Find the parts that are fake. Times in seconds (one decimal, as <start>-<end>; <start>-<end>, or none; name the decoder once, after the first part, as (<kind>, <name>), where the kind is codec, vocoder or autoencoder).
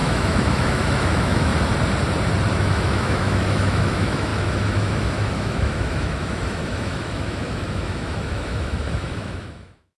0.0-1.5 (autoencoder, DAC-VAE); 2.5-10.0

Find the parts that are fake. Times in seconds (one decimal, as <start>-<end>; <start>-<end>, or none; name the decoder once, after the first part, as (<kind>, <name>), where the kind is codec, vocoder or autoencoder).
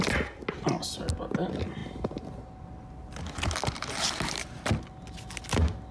none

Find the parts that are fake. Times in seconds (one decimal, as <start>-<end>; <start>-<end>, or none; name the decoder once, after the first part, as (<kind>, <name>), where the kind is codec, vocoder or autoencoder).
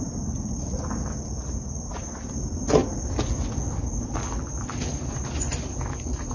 none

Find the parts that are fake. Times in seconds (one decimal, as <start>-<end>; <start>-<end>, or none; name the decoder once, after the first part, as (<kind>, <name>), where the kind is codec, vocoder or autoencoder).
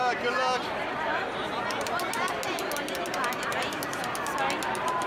none